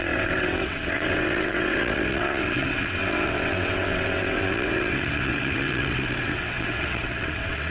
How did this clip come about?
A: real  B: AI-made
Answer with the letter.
B